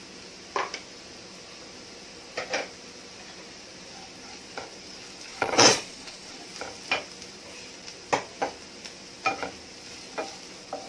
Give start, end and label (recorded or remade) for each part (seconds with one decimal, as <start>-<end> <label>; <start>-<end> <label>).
0.0-5.3 recorded; 5.3-6.4 remade; 6.4-10.9 recorded